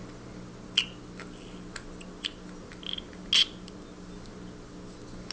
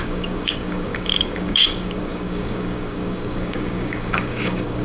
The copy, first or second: second